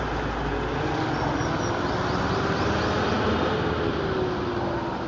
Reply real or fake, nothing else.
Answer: real